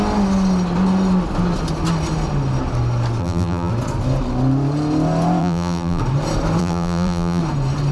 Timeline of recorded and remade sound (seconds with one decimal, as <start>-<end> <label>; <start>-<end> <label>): 0.0-3.2 recorded; 3.2-3.7 remade; 3.7-5.4 recorded; 5.4-6.0 remade; 6.0-6.6 recorded; 6.6-7.4 remade; 7.4-7.9 recorded